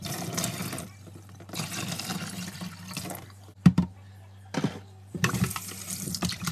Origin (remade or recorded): remade